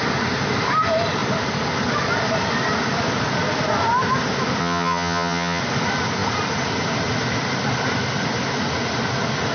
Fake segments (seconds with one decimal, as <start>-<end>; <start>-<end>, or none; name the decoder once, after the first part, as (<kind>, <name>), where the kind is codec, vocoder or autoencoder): 4.6-5.6 (vocoder, HiFi-GAN)